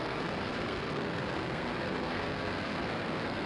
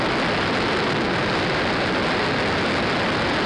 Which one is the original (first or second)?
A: second